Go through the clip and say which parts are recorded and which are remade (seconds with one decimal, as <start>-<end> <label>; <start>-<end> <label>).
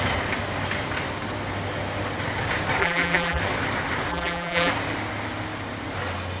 0.0-2.8 recorded; 2.8-3.4 remade; 3.4-4.1 recorded; 4.1-4.7 remade; 4.7-6.4 recorded